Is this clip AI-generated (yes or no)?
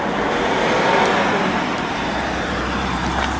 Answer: yes